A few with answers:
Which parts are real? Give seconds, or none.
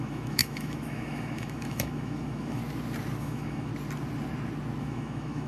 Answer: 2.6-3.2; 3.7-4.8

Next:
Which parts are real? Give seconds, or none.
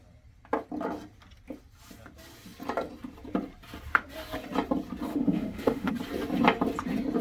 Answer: 0.0-5.1; 5.9-7.2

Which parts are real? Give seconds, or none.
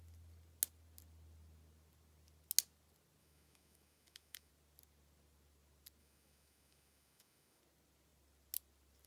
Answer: 0.0-3.2; 4.5-6.0; 7.6-9.1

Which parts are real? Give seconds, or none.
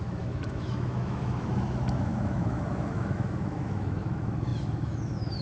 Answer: none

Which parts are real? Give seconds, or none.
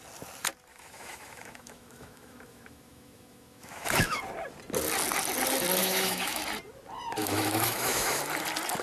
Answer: 0.0-0.7; 4.2-5.8; 6.4-7.2; 8.2-8.8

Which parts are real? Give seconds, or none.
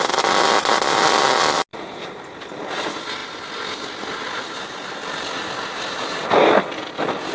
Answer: 0.0-7.3